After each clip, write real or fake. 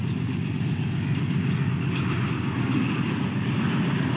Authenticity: real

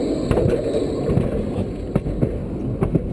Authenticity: real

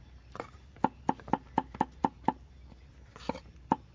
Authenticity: fake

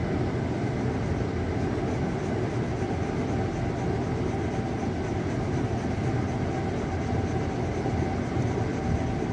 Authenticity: real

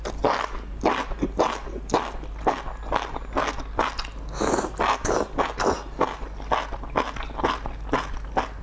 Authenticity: real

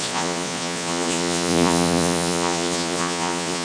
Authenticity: fake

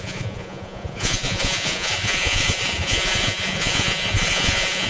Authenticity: fake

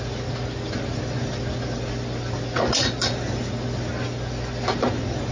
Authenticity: real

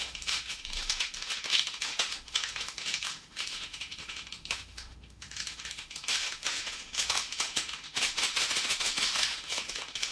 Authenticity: fake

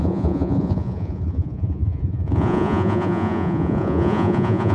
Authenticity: fake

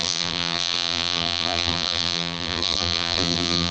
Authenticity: fake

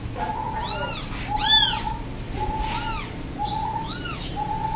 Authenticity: real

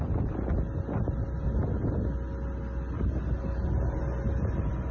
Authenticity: real